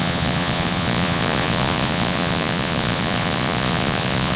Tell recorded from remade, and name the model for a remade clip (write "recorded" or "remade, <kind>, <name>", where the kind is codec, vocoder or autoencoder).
remade, vocoder, Vocos